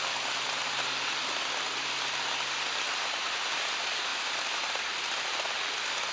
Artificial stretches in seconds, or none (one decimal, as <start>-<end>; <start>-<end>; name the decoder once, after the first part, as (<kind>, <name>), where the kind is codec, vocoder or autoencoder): 4.1-5.2 (vocoder, BigVGAN v2)